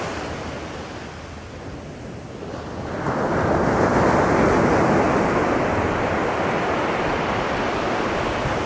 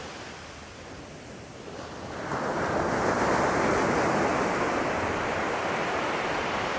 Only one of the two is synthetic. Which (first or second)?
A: second